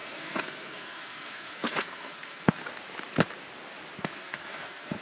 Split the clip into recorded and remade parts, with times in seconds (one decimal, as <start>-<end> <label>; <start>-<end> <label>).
0.0-2.6 remade; 2.6-4.0 recorded; 4.0-5.0 remade